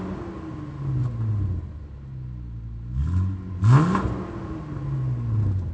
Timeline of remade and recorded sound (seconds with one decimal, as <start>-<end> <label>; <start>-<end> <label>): 0.0-5.7 recorded